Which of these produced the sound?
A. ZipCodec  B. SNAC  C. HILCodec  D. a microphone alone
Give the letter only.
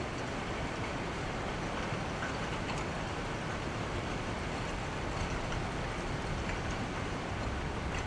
D